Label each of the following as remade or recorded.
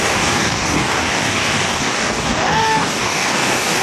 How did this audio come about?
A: remade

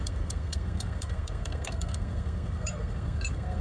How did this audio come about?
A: remade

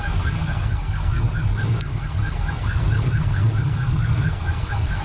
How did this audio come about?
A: remade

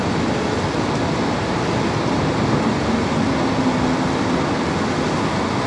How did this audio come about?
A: recorded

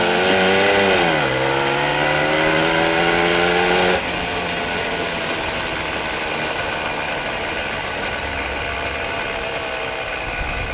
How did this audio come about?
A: recorded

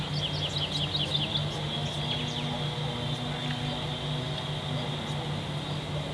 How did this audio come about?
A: recorded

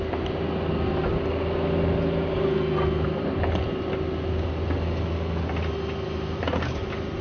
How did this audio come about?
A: recorded